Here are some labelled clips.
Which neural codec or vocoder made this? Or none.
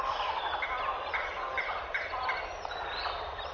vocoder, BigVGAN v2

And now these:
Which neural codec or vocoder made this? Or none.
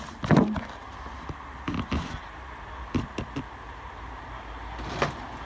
none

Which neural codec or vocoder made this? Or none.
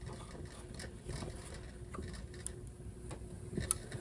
none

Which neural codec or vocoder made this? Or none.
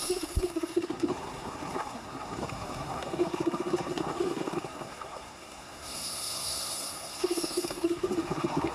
codec, SNAC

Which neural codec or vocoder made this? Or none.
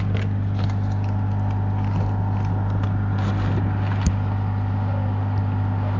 none